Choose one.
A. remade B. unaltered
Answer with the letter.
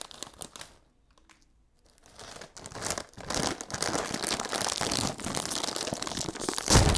B